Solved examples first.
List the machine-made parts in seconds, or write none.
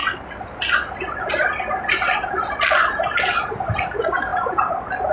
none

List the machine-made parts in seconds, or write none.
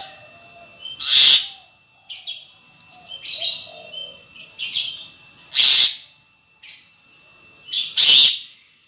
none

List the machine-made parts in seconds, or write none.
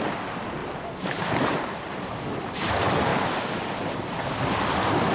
0.6-2.7 (vocoder, BigVGAN v2)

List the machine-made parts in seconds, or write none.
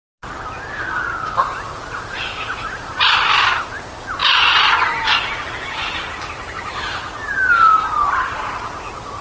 4.2-6.8 (vocoder, BigVGAN v2)